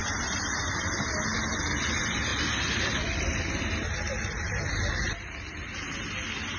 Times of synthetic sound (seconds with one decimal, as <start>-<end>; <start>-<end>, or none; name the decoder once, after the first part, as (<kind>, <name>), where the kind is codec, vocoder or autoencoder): 0.0-0.8 (vocoder, BigVGAN v2); 2.3-4.7